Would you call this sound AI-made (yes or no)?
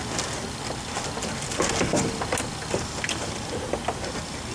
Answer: no